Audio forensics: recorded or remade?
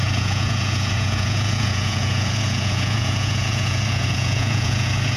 remade